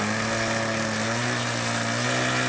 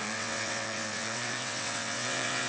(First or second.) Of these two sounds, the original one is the first